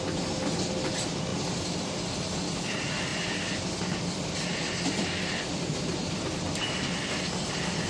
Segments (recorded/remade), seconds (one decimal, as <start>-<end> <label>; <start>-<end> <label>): 0.0-1.3 recorded; 1.3-1.8 remade; 1.8-3.1 recorded; 3.1-6.8 remade; 6.8-7.9 recorded